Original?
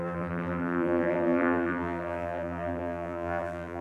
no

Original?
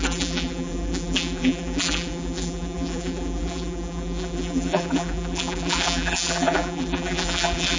no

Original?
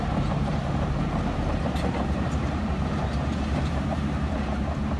no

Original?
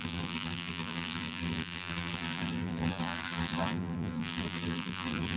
no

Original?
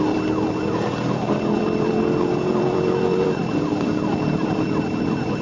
no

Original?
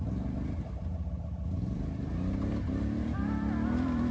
no